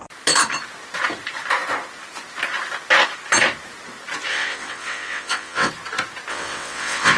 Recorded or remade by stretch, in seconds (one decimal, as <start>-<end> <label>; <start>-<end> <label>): 0.0-4.3 recorded; 4.3-5.7 remade; 5.7-6.3 recorded; 6.3-7.2 remade